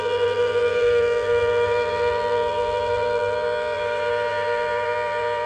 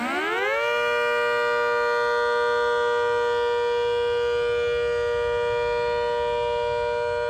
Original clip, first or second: second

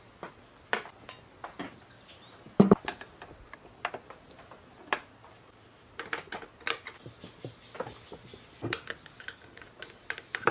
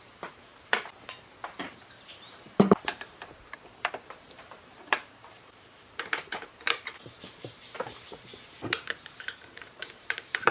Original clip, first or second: first